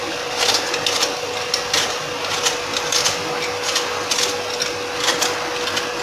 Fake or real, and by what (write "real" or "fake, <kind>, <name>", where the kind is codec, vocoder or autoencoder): real